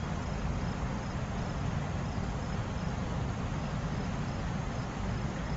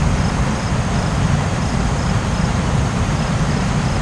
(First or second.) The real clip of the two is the first